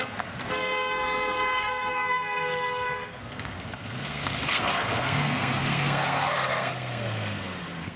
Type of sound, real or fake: fake